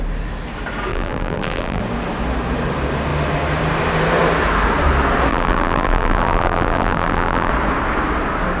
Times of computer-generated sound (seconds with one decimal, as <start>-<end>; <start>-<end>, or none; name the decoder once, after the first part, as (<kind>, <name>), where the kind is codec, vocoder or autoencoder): 0.9-1.8 (vocoder, BigVGAN v2); 5.3-7.5